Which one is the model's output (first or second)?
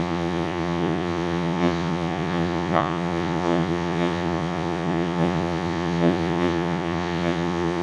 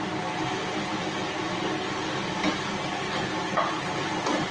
first